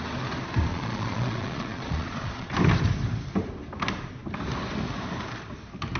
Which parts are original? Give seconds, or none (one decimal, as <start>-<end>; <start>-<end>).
0.0-0.7; 2.5-6.0

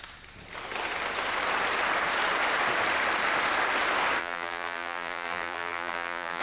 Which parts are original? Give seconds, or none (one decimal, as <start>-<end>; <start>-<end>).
0.0-4.2

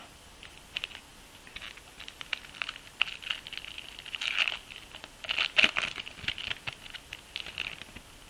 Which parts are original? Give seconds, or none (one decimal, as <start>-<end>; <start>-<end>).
0.0-1.1; 1.6-8.3

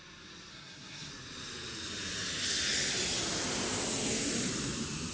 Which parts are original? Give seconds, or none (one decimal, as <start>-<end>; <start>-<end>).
0.0-0.5; 1.1-5.1

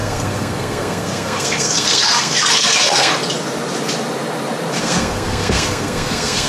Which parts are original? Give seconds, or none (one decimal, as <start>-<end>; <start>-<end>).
3.1-4.8

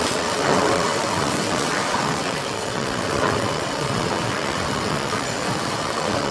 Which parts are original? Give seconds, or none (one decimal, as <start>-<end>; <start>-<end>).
none